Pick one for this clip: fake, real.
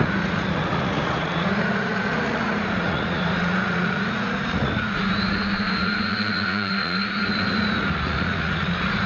fake